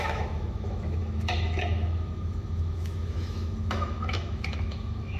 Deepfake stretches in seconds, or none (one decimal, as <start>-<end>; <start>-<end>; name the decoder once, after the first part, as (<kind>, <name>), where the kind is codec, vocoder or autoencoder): 0.0-5.2 (autoencoder, DAC-VAE)